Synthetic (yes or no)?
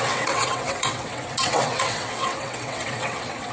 yes